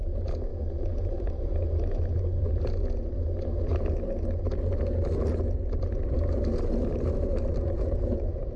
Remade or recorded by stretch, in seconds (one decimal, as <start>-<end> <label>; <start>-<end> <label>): 0.0-0.5 recorded; 0.5-2.6 remade; 2.6-8.6 recorded